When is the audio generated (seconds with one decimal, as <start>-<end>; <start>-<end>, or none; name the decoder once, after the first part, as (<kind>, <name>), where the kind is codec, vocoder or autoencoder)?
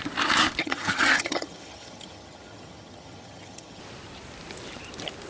0.6-3.8 (vocoder, HiFi-GAN)